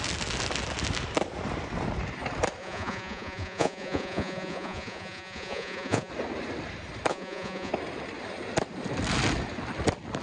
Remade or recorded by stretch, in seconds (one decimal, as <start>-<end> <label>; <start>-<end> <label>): 0.0-2.6 recorded; 2.6-6.1 remade; 6.1-7.1 recorded; 7.1-7.7 remade; 7.7-10.2 recorded